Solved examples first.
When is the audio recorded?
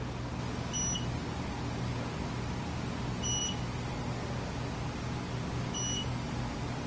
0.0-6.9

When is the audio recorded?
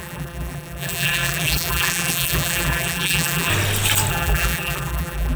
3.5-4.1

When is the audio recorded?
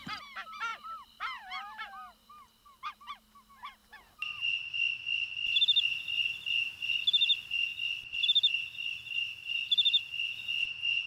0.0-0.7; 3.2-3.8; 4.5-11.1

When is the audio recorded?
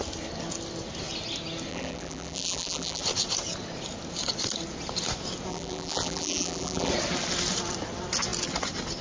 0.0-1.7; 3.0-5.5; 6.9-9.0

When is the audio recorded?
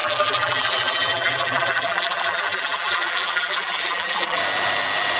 4.4-5.2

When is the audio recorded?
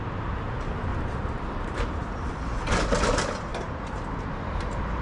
0.0-0.9; 2.3-3.5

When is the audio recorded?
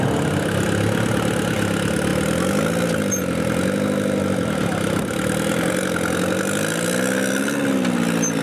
0.0-8.4